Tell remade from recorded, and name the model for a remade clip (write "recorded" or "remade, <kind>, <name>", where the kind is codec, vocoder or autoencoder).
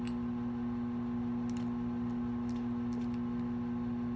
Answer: recorded